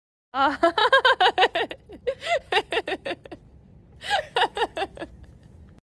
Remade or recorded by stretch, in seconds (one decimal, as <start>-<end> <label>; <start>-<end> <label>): 0.0-3.7 recorded; 3.7-5.8 remade